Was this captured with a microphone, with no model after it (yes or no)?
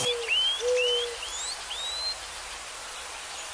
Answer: yes